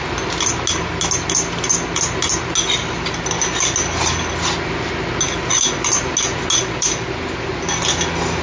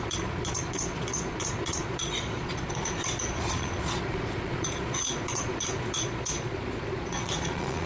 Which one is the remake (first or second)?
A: second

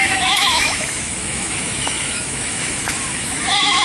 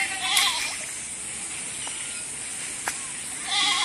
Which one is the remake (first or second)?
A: first